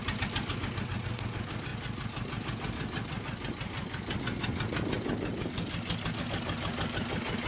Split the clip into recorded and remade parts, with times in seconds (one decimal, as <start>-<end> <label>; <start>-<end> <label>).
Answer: 0.0-7.5 recorded